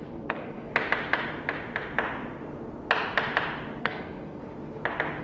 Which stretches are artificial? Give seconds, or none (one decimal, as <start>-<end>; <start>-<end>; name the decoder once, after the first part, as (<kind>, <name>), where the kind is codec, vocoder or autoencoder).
0.0-0.7 (codec, SNAC); 3.8-4.4